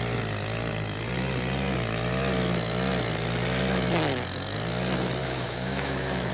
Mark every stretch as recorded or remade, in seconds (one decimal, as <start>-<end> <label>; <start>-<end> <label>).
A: 0.0-5.2 recorded; 5.2-6.3 remade

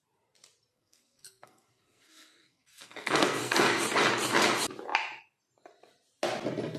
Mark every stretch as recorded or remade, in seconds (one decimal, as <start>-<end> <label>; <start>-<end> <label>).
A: 0.0-0.7 recorded; 0.7-3.8 remade; 3.8-6.8 recorded

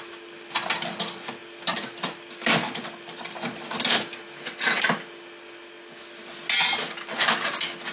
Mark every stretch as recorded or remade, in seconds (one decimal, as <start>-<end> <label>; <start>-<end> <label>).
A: 0.0-7.9 recorded

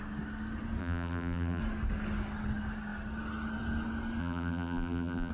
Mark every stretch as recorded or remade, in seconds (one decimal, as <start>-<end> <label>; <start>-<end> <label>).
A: 0.0-0.8 recorded; 0.8-1.6 remade; 1.6-4.2 recorded; 4.2-5.3 remade